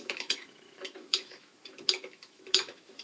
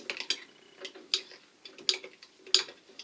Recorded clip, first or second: second